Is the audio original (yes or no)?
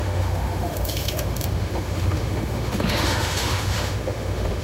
no